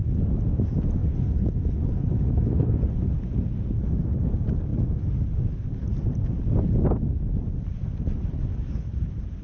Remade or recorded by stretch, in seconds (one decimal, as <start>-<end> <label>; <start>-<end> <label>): 0.0-1.0 recorded; 1.0-3.1 remade; 3.1-9.4 recorded